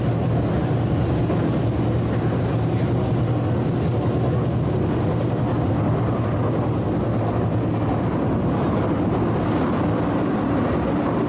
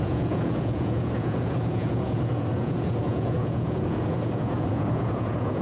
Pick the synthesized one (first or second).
second